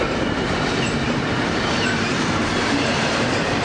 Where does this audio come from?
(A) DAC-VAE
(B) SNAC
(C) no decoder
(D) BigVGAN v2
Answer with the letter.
D